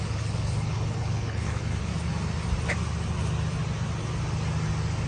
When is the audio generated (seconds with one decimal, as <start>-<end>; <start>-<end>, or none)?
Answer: 0.0-1.9